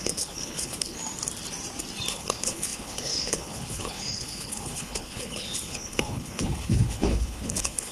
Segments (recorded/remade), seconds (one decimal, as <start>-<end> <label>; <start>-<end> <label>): 0.0-1.0 remade; 1.0-2.1 recorded; 2.1-7.9 remade